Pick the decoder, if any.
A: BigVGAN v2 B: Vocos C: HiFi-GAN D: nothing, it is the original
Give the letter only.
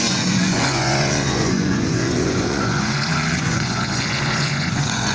B